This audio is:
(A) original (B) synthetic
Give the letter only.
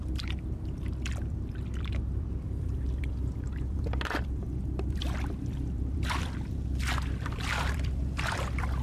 B